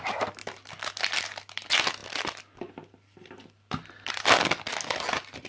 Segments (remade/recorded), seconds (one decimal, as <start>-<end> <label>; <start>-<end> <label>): 0.0-0.4 recorded; 0.4-1.0 remade; 1.0-2.0 recorded; 2.0-4.2 remade; 4.2-5.5 recorded